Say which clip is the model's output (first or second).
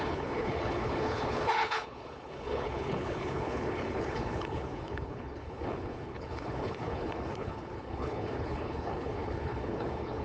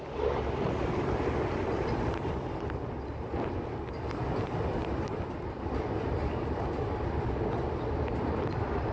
first